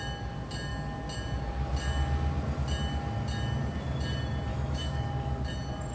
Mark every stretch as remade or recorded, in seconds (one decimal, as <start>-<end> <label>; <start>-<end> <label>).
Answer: 0.0-4.5 recorded; 4.5-5.1 remade; 5.1-5.9 recorded